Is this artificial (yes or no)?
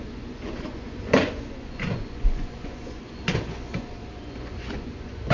yes